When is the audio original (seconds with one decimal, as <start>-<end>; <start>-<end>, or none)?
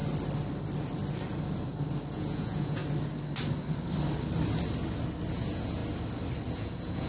0.0-2.1; 2.8-5.3; 5.8-6.5